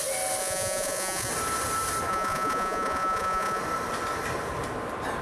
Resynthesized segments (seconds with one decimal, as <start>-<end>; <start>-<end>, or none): 0.4-1.3; 2.1-3.6